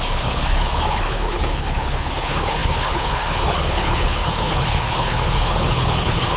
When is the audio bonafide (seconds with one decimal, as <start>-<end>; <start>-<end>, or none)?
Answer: none